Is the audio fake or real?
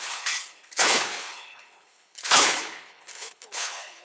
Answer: fake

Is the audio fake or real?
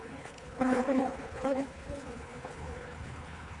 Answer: fake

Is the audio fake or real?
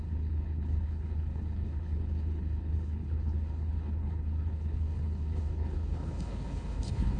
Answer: fake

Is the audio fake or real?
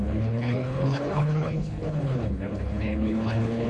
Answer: fake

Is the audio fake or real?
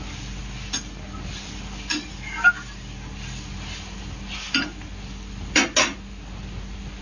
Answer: real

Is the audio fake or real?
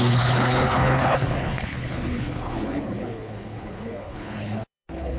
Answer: fake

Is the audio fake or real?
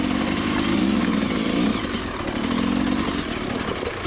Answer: real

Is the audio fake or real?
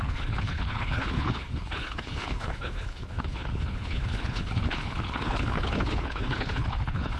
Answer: fake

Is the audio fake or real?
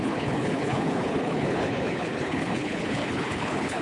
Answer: fake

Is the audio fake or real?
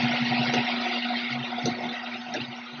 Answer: real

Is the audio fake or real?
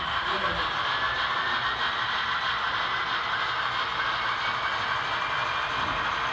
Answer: real